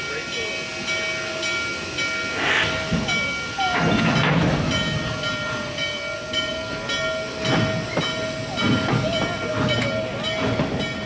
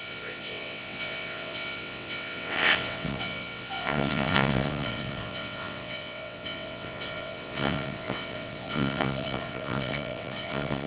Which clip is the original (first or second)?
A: first